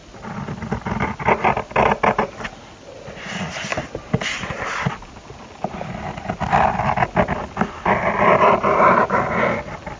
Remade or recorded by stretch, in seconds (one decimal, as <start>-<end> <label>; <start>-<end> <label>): 0.0-10.0 recorded